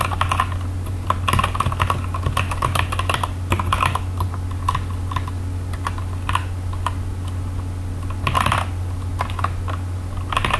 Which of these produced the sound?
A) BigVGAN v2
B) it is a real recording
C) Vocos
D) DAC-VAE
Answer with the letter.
B